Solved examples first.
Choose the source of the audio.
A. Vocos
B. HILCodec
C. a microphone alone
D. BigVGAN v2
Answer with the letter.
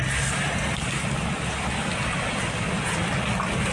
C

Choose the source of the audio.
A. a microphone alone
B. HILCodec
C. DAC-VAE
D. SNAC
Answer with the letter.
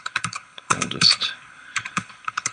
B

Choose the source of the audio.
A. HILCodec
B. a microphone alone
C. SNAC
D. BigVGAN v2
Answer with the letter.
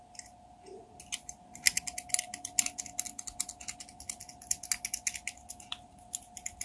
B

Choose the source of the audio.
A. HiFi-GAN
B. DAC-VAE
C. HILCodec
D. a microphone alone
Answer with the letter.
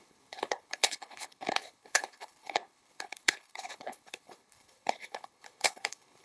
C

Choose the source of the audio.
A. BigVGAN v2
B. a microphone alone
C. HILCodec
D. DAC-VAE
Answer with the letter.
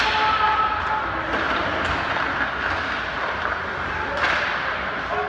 B